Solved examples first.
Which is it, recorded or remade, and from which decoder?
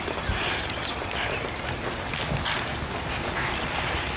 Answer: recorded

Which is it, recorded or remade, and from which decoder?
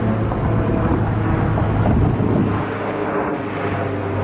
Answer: recorded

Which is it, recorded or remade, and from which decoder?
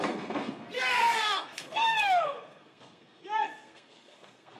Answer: remade, codec, SNAC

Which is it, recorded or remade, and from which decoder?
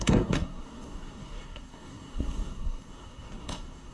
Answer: remade, codec, SNAC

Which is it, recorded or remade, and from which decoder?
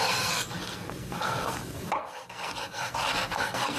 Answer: remade, codec, SNAC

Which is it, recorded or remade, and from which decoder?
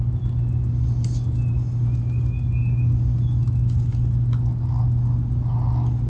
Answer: recorded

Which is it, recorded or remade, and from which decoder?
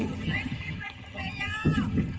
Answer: remade, vocoder, HiFi-GAN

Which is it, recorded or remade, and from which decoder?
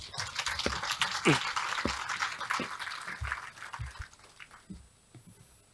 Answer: recorded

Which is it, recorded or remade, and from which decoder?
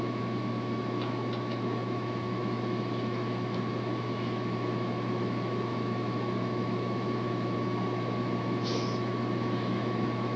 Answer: remade, autoencoder, DAC-VAE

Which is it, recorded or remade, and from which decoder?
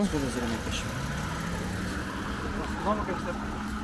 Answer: recorded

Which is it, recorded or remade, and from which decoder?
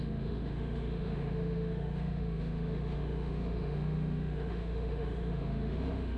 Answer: remade, autoencoder, DAC-VAE